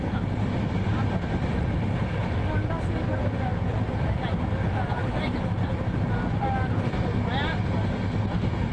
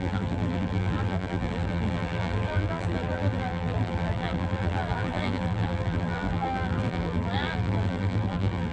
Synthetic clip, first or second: second